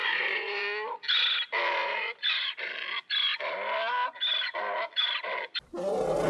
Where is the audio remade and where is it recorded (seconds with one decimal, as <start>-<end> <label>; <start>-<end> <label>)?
0.0-0.6 remade; 0.6-1.8 recorded; 1.8-2.4 remade; 2.4-6.3 recorded